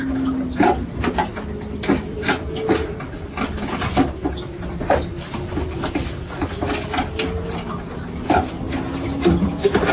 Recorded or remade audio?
recorded